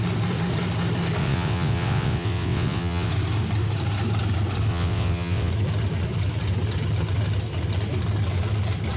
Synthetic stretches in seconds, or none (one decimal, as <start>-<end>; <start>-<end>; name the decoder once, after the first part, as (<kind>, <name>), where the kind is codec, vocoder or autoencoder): 1.2-3.1 (vocoder, WaveNeXt); 4.7-5.5